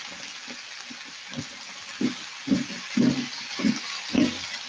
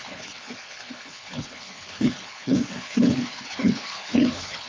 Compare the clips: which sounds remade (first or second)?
second